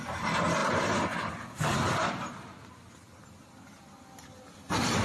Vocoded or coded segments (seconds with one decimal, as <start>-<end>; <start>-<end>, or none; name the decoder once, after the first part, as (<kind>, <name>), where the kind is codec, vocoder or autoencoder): none